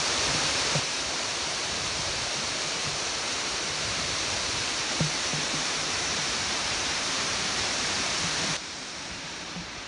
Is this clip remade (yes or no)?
yes